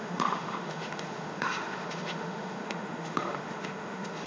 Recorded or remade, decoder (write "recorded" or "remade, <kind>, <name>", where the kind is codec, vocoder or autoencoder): remade, autoencoder, DAC-VAE